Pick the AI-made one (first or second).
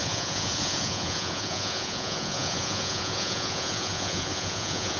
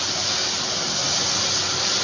first